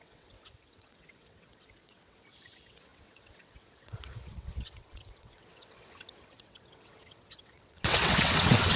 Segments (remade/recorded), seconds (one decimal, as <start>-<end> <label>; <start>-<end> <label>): 0.0-8.8 remade